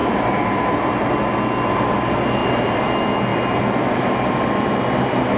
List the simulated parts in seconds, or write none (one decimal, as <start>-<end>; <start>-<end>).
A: 0.0-0.9; 2.4-2.9